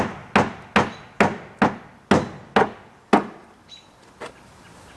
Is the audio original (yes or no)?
yes